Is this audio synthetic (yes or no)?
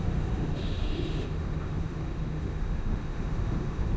yes